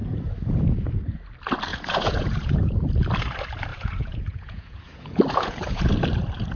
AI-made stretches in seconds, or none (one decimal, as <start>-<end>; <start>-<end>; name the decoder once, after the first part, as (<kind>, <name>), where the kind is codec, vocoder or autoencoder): 1.7-2.9 (vocoder, Vocos); 3.7-5.9